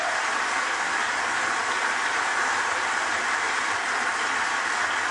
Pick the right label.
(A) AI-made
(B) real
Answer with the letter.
A